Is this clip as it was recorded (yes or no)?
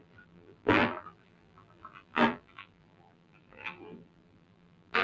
no